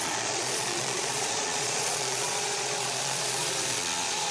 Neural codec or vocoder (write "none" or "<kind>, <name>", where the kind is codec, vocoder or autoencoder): vocoder, Vocos